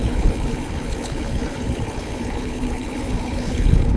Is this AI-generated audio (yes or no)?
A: yes